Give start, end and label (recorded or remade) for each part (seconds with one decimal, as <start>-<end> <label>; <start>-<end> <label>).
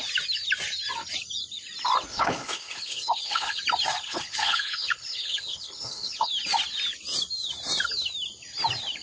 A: 0.0-2.1 recorded; 2.1-3.6 remade; 3.6-4.0 recorded; 4.0-6.3 remade; 6.3-9.0 recorded